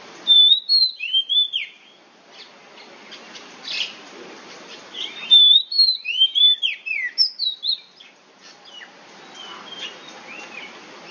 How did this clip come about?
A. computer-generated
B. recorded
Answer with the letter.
B